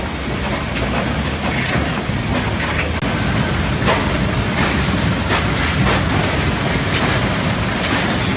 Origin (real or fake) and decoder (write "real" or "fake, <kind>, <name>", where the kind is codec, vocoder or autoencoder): real